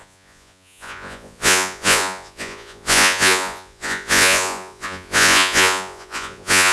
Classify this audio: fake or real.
fake